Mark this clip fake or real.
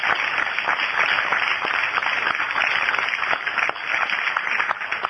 real